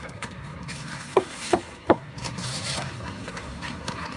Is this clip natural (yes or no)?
no